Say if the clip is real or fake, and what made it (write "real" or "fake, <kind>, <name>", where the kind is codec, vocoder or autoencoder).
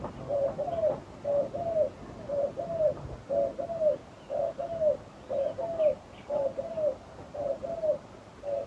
real